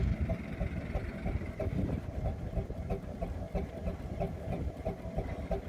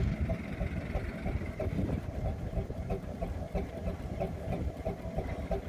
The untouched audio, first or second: first